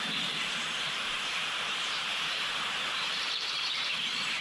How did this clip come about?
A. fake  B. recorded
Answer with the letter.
A